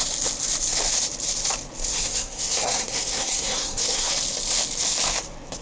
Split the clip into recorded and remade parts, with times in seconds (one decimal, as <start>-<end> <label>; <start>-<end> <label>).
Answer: 0.0-1.9 recorded; 1.9-4.1 remade; 4.1-5.6 recorded